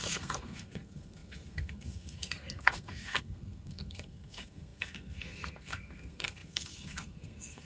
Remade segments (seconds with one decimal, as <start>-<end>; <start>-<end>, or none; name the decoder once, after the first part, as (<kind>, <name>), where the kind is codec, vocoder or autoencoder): 0.0-7.6 (codec, SNAC)